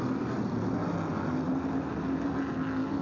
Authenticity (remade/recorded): recorded